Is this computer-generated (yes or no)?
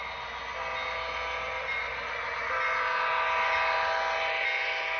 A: no